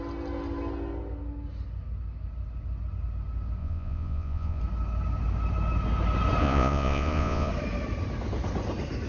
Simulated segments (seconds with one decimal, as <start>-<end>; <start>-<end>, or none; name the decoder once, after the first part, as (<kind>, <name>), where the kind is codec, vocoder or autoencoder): 3.6-4.6 (vocoder, Vocos); 6.4-7.5